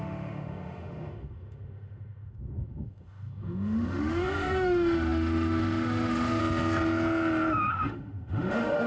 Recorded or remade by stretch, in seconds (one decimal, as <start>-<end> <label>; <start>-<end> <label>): 0.0-6.4 remade; 6.4-7.7 recorded; 7.7-8.9 remade